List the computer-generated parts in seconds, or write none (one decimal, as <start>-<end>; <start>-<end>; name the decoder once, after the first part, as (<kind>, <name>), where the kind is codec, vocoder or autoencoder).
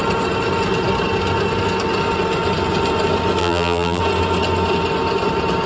3.4-4.0 (vocoder, BigVGAN v2)